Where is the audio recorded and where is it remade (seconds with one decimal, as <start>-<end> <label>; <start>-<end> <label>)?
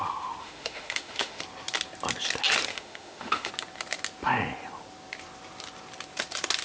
0.0-0.4 recorded; 0.4-1.4 remade; 1.4-2.7 recorded; 2.7-3.5 remade; 3.5-6.6 recorded